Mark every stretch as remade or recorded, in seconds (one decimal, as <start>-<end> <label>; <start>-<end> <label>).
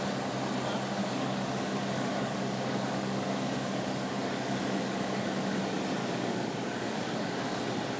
0.0-1.0 recorded; 1.0-5.6 remade; 5.6-6.0 recorded; 6.0-7.6 remade; 7.6-8.0 recorded